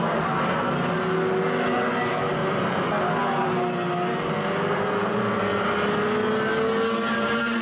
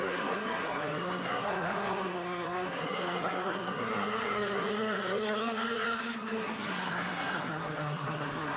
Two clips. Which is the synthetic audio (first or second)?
second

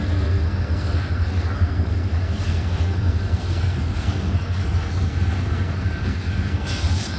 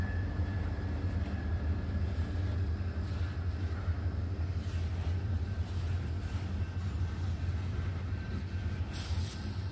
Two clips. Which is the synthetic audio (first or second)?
first